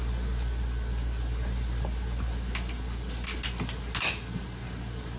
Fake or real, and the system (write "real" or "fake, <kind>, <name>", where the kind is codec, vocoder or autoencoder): real